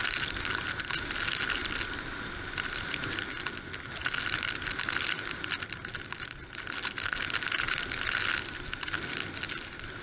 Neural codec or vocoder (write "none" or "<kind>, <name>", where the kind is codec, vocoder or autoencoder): vocoder, BigVGAN v2